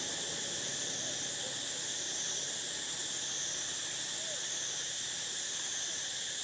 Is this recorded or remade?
recorded